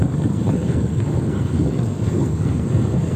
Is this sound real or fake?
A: fake